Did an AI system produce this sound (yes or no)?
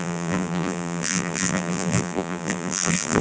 yes